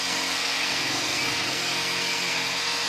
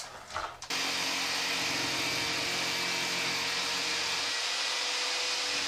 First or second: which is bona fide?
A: second